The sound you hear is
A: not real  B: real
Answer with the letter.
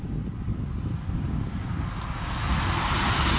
B